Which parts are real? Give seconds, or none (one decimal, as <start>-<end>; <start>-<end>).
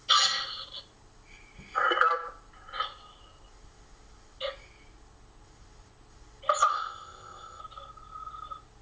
0.0-6.7; 7.6-8.8